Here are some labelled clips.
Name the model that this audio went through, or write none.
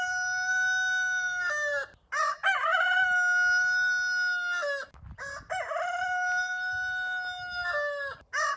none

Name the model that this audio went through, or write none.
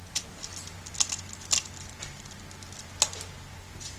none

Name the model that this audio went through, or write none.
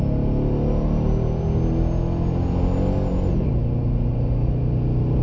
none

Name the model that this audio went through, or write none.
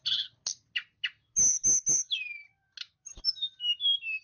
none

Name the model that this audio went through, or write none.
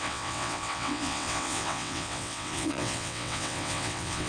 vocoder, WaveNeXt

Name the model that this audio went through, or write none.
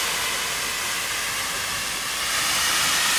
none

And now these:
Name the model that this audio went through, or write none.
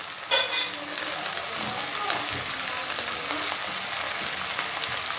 none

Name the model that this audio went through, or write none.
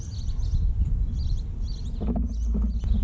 none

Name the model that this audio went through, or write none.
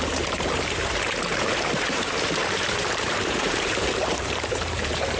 vocoder, BigVGAN v2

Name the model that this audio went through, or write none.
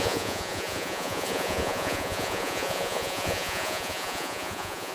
vocoder, Vocos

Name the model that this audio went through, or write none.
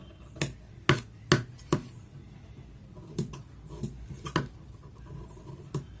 none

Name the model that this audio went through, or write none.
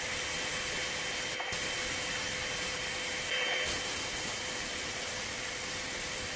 none